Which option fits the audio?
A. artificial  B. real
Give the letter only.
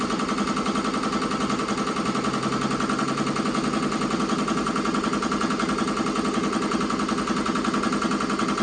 B